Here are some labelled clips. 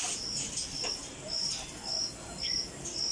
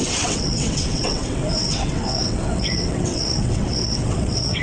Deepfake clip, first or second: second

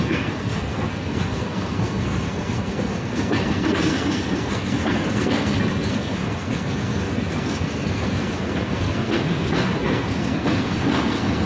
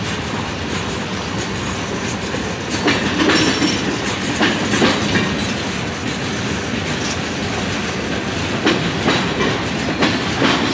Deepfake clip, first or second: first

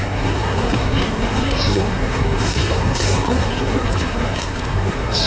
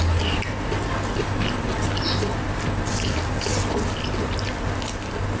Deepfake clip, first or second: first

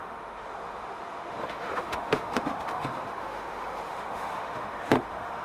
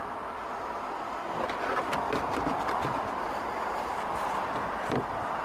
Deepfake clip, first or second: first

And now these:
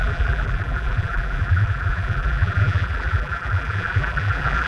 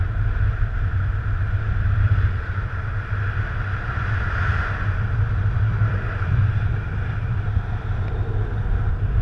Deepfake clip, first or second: first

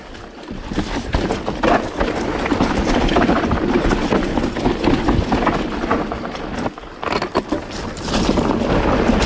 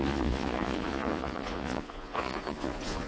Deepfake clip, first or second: second